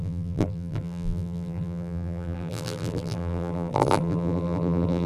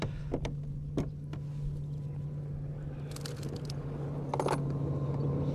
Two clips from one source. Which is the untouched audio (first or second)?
second